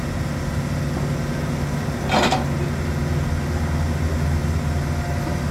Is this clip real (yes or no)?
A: yes